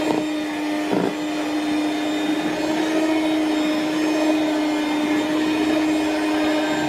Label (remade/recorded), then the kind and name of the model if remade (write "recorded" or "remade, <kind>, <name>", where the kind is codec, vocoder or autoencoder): recorded